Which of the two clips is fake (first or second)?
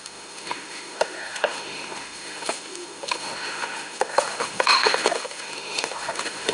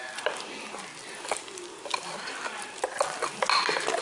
first